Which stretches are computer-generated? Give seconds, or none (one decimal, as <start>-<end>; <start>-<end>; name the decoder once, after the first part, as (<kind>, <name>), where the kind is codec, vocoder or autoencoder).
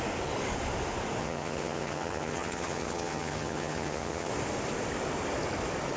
1.2-4.3 (vocoder, HiFi-GAN)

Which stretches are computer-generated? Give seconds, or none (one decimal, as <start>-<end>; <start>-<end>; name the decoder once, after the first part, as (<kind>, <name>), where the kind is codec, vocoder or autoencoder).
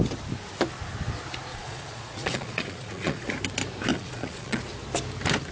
1.5-3.3 (vocoder, Vocos); 3.9-4.6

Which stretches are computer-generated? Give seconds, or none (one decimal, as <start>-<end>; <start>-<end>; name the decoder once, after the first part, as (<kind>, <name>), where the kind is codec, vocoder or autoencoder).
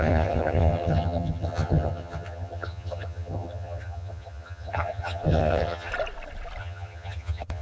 0.0-5.9 (vocoder, HiFi-GAN); 6.6-7.6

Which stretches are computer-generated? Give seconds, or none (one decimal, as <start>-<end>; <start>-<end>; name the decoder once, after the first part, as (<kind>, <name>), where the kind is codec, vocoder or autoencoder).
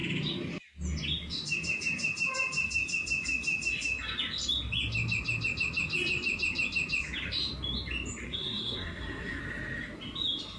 8.2-9.4 (codec, SNAC)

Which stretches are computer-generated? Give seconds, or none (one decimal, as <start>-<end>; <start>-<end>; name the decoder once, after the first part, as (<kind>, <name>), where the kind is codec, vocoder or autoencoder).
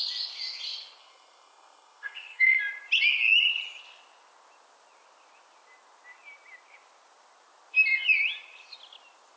1.0-2.6 (codec, SNAC)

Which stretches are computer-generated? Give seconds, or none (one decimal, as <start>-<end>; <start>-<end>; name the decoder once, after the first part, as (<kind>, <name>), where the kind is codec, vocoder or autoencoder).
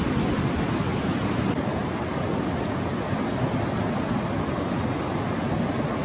none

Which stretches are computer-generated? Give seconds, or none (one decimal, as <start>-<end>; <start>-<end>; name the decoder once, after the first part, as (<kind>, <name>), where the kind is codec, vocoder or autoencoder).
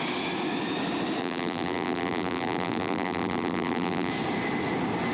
1.2-4.1 (vocoder, BigVGAN v2)